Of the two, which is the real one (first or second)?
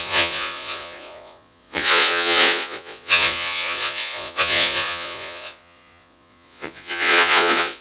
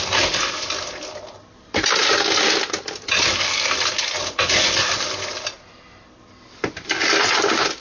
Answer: second